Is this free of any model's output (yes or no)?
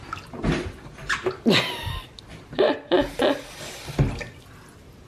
yes